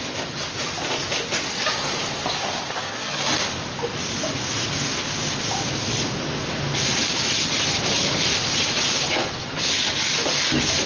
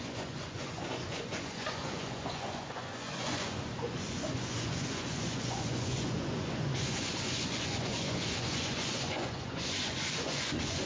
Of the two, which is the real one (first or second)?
first